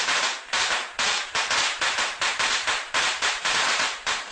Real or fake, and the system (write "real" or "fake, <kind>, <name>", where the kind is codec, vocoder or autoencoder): fake, vocoder, BigVGAN v2